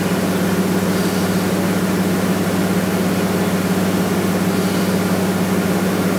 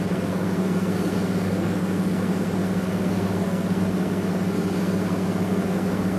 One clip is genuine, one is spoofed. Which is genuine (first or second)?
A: first